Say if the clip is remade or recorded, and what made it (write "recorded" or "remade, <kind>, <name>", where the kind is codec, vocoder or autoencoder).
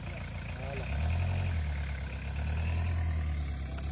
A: recorded